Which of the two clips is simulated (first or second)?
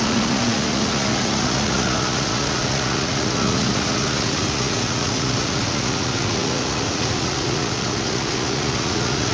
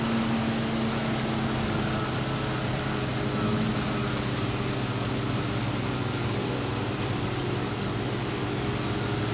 first